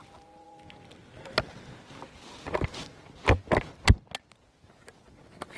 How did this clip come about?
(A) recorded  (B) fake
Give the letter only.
A